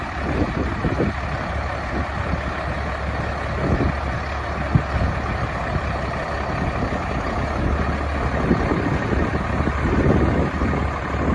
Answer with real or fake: real